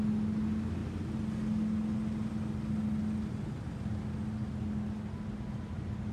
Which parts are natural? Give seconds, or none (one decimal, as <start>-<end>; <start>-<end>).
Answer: 0.0-6.1